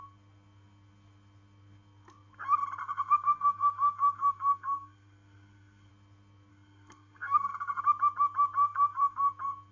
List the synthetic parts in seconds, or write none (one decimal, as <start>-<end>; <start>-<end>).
2.8-5.9; 6.5-7.8; 8.6-9.2